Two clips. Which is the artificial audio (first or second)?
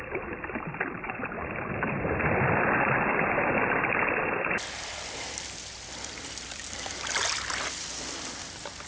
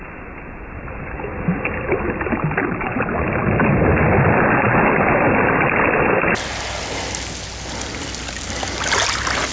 first